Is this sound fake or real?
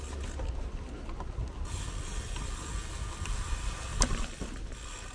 real